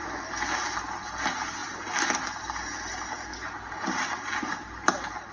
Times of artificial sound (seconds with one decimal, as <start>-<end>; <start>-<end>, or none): none